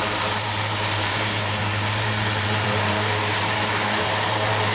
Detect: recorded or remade remade